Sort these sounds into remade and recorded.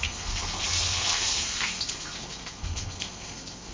remade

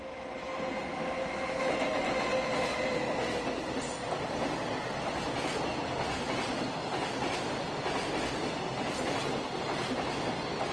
recorded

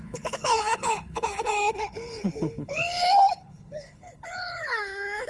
remade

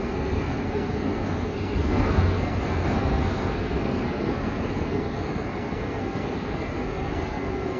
remade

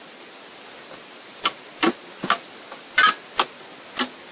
recorded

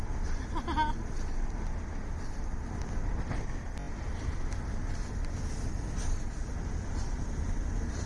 recorded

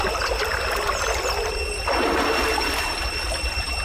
recorded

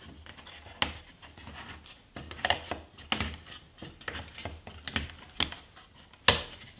recorded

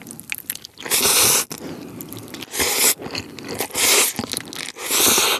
recorded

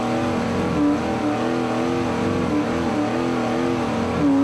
recorded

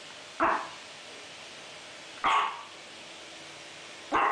recorded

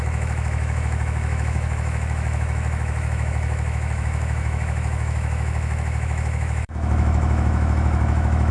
remade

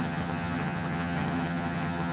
remade